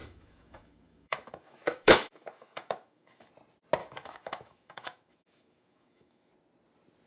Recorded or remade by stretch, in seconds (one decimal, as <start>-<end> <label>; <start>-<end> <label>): 0.0-3.3 remade; 3.3-3.8 recorded; 3.8-6.3 remade; 6.3-7.1 recorded